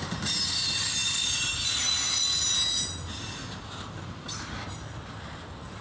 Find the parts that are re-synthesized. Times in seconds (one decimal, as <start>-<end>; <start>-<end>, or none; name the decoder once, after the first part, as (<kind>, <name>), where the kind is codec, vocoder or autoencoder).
none

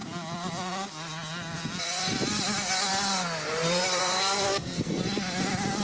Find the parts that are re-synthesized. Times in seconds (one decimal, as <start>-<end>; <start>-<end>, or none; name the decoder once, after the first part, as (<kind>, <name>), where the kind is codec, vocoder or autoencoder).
4.0-5.0 (codec, SNAC)

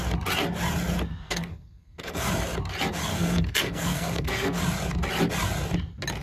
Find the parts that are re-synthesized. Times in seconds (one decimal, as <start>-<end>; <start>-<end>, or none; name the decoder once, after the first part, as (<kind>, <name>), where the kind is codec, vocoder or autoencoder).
1.1-2.3 (codec, SNAC); 3.1-4.6

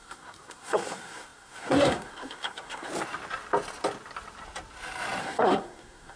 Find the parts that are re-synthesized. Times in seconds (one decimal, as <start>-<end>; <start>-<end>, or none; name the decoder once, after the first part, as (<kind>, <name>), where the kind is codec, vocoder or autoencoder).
0.0-2.9 (codec, SNAC); 5.2-6.2